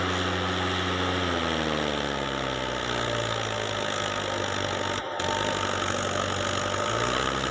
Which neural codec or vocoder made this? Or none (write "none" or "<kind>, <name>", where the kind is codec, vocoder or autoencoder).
none